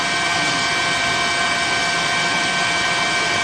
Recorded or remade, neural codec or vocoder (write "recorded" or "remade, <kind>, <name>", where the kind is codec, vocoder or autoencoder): recorded